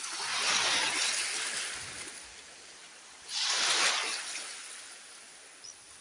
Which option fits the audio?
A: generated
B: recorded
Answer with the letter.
B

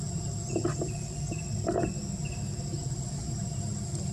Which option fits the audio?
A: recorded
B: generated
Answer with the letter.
A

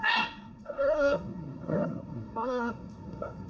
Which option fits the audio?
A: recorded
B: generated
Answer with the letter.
B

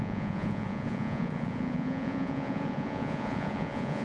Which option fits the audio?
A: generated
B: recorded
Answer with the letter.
A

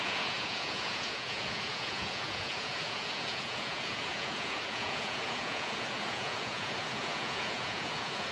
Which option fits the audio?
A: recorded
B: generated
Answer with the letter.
B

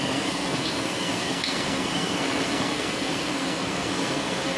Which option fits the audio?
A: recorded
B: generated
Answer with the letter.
B